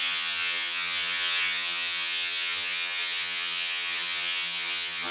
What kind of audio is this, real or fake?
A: fake